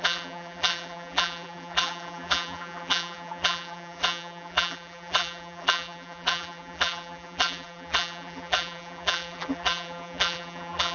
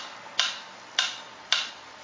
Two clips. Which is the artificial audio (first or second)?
first